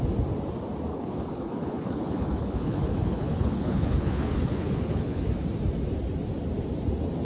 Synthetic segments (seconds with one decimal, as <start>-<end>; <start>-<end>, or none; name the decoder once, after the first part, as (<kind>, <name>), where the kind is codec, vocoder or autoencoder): 0.9-5.2 (codec, HILCodec)